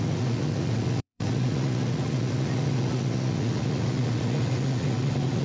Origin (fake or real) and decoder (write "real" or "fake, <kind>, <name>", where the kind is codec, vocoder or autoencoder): fake, vocoder, Vocos